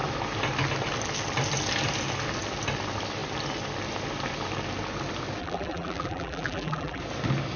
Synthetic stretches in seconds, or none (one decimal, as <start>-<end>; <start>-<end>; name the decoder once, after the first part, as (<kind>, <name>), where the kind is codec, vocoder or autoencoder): 5.4-7.0 (vocoder, BigVGAN v2)